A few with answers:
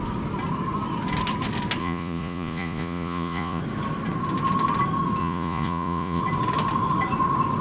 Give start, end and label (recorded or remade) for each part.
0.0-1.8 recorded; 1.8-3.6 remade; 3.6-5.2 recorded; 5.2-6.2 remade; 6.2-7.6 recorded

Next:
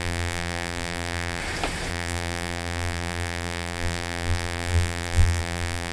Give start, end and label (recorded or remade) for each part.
0.0-1.4 remade; 1.4-1.9 recorded; 1.9-5.9 remade

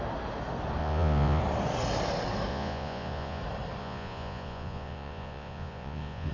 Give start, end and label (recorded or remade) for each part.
0.0-0.8 recorded; 0.8-1.4 remade; 1.4-2.5 recorded; 2.5-3.4 remade; 3.4-3.8 recorded; 3.8-6.3 remade

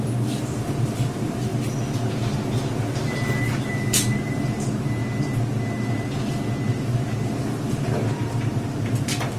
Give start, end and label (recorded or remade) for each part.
0.0-1.5 remade; 1.5-3.7 recorded; 3.7-5.0 remade; 5.0-6.6 recorded; 6.6-9.4 remade

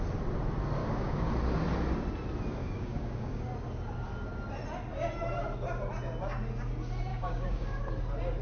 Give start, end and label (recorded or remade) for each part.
0.0-0.8 recorded; 0.8-1.3 remade; 1.3-2.6 recorded; 2.6-3.4 remade; 3.4-7.1 recorded; 7.1-7.8 remade; 7.8-8.4 recorded